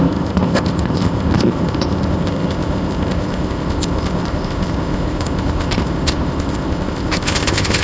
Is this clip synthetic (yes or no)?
yes